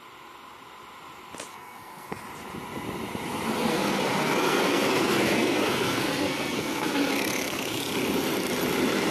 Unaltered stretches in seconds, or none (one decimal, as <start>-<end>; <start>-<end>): 0.0-1.5; 2.2-3.7; 7.8-9.1